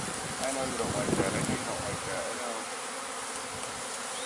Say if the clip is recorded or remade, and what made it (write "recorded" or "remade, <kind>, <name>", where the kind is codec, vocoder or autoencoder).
recorded